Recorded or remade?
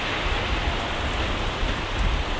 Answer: recorded